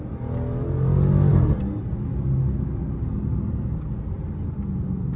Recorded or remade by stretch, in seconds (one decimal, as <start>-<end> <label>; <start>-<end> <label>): 0.0-5.2 recorded